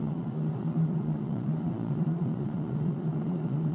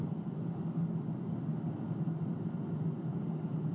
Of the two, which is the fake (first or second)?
first